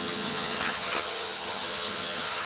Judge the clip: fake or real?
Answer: fake